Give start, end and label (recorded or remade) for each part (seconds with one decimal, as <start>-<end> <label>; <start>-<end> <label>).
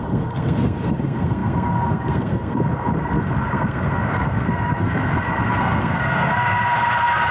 0.0-7.3 remade